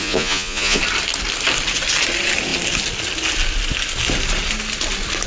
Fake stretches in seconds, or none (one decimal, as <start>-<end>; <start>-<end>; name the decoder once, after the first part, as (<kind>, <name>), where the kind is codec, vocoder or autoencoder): 0.0-0.8 (vocoder, Vocos)